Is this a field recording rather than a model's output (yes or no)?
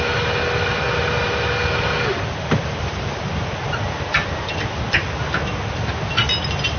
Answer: yes